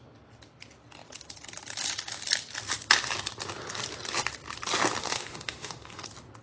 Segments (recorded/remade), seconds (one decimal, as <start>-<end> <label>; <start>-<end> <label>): 0.0-5.0 recorded; 5.0-6.0 remade; 6.0-6.4 recorded